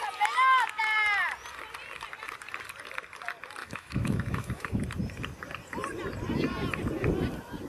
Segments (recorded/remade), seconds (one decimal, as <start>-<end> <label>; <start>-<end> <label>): 0.0-3.6 recorded; 3.6-4.8 remade; 4.8-7.7 recorded